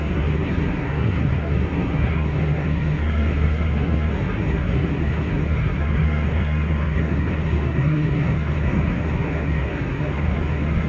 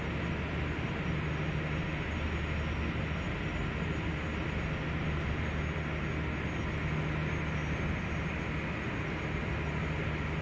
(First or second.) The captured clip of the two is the second